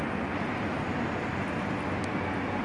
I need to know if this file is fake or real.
real